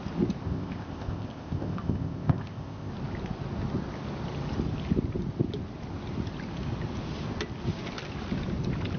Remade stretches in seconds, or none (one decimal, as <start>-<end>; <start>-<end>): 0.4-2.9